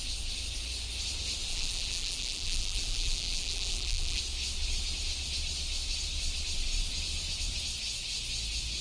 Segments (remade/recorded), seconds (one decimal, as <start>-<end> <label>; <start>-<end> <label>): 0.0-1.5 recorded; 1.5-4.2 remade; 4.2-8.8 recorded